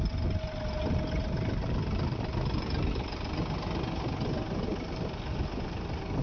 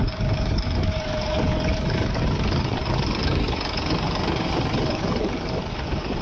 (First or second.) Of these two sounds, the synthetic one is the second